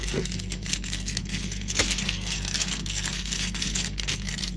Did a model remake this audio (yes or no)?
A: yes